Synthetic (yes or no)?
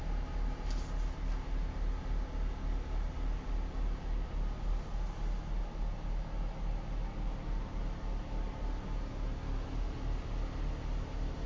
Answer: no